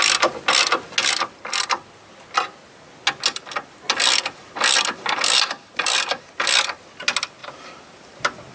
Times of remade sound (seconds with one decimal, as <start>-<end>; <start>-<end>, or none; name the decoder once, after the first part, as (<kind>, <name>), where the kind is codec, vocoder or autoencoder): 7.4-8.5 (vocoder, BigVGAN v2)